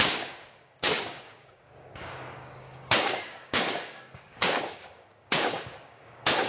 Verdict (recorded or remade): remade